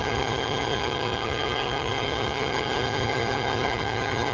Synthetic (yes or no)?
yes